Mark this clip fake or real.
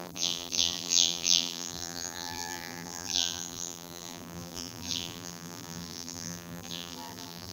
fake